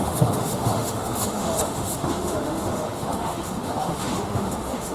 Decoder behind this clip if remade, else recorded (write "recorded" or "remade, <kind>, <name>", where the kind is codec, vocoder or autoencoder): remade, autoencoder, DAC-VAE